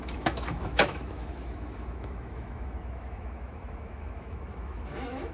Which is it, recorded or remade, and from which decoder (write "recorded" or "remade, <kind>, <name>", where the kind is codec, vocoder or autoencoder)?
remade, autoencoder, DAC-VAE